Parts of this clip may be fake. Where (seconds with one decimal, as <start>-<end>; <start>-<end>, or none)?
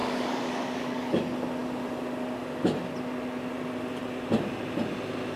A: 0.0-1.2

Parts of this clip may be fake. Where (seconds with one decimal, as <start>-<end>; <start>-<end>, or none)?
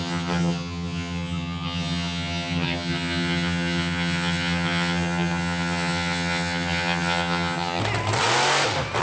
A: 0.0-7.8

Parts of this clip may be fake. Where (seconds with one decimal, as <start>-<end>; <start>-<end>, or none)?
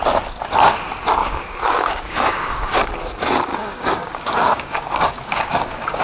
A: 1.2-2.8; 3.5-6.0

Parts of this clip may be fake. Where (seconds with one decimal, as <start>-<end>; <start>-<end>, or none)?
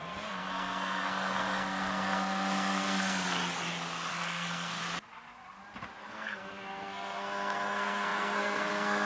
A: 0.0-3.4; 4.1-4.8; 6.0-9.1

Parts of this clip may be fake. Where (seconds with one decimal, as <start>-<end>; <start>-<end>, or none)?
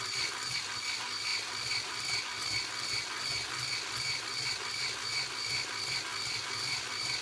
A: none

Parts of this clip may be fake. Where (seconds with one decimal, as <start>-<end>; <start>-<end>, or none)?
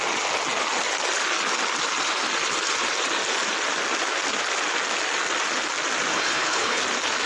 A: 6.1-6.8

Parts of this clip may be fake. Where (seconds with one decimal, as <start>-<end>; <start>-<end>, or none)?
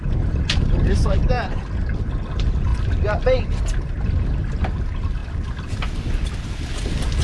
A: none